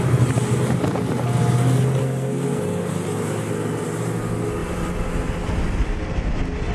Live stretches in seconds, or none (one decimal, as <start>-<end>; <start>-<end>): 0.0-2.0; 2.6-6.7